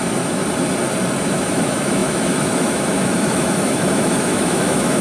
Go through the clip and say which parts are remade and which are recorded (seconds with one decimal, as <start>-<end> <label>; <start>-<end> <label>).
0.0-0.4 remade; 0.4-1.2 recorded; 1.2-5.0 remade